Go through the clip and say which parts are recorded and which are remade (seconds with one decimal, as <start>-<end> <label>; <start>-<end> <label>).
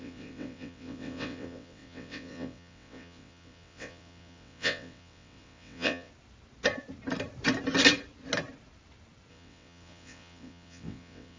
0.0-6.1 remade; 6.1-9.3 recorded; 9.3-11.4 remade